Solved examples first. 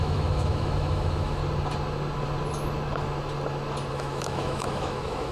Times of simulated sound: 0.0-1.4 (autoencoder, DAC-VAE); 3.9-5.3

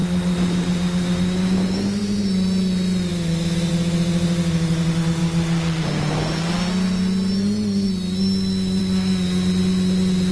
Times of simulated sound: 3.1-3.7 (autoencoder, DAC-VAE)